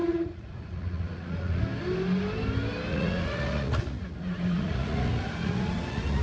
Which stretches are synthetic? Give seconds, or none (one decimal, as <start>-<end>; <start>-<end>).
0.0-1.6; 2.9-6.2